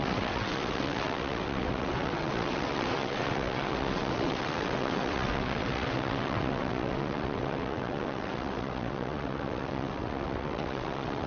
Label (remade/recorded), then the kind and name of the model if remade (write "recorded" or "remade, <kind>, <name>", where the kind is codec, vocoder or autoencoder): remade, vocoder, WaveNeXt